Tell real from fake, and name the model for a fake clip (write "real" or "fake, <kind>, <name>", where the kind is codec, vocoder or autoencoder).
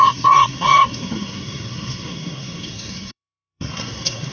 fake, codec, SNAC